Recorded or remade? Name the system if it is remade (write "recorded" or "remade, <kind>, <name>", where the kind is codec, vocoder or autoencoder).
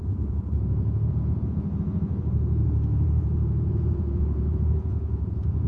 remade, vocoder, Vocos